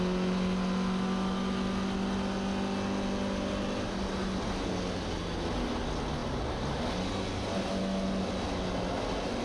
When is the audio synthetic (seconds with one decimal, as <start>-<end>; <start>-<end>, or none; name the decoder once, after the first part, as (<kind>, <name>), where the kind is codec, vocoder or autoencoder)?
none